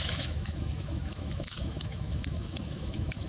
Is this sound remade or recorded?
remade